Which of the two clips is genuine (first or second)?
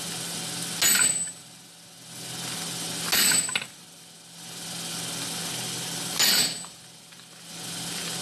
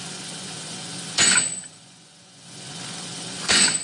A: first